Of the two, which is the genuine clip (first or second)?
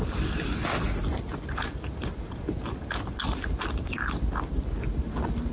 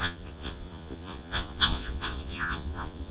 first